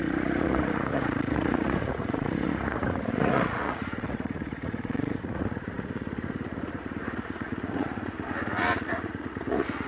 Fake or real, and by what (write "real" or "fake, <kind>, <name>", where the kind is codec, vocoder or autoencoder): fake, vocoder, Vocos